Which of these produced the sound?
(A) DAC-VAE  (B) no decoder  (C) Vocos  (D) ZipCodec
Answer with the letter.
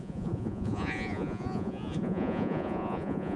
C